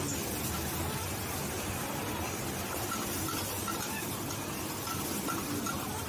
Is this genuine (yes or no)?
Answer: yes